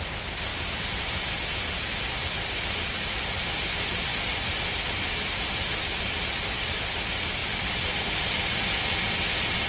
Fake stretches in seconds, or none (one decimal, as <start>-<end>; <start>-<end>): 0.5-1.4; 2.2-3.6; 7.4-8.0